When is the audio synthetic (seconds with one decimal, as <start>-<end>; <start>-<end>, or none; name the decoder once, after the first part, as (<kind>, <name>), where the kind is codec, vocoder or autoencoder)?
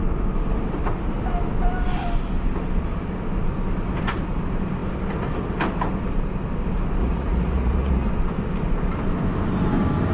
7.0-8.1 (vocoder, Vocos)